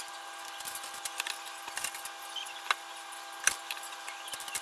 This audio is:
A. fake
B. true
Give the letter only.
B